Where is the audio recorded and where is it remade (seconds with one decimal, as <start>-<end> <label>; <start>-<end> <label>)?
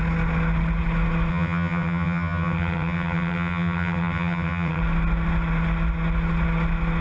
0.0-1.3 recorded; 1.3-4.8 remade; 4.8-7.0 recorded